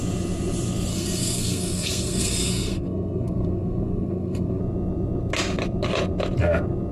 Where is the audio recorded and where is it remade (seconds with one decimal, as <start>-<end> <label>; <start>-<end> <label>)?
0.0-0.9 recorded; 0.9-4.6 remade; 4.6-6.9 recorded